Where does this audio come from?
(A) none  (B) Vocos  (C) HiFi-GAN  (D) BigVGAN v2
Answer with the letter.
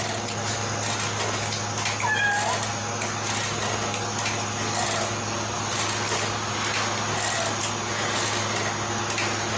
A